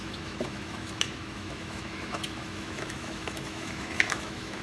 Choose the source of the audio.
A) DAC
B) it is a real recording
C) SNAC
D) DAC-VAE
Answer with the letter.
D